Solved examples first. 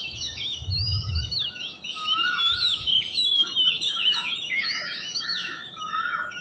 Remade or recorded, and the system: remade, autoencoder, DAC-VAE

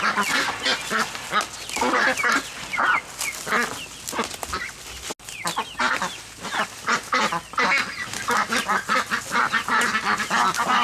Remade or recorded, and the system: recorded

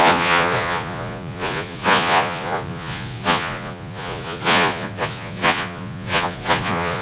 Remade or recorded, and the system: remade, vocoder, Vocos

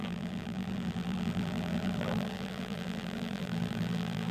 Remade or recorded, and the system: remade, vocoder, BigVGAN v2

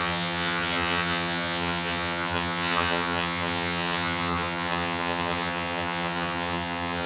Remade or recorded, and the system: remade, vocoder, HiFi-GAN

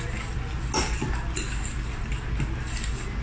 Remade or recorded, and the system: recorded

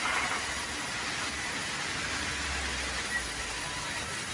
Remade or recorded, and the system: recorded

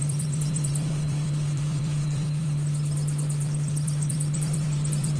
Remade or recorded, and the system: remade, vocoder, BigVGAN v2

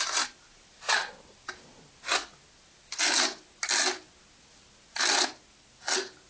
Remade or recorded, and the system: recorded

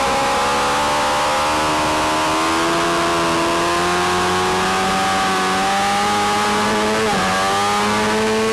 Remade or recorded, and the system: recorded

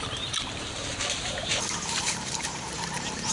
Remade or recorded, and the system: remade, vocoder, BigVGAN v2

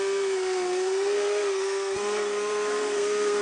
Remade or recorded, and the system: remade, codec, SNAC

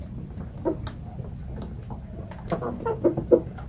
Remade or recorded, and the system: recorded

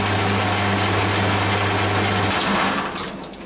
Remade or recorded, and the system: recorded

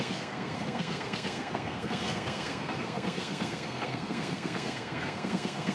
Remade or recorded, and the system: remade, codec, SNAC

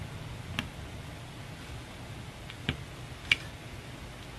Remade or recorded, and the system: recorded